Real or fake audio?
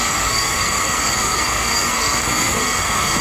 fake